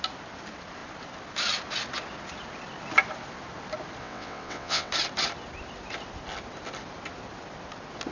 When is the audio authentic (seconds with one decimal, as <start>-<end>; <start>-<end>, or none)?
0.0-4.0; 4.9-8.1